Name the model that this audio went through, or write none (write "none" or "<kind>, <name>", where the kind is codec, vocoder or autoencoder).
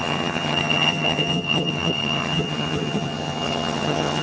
vocoder, HiFi-GAN